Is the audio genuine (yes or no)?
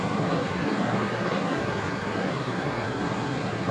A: no